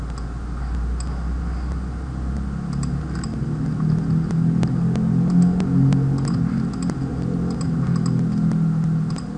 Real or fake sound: real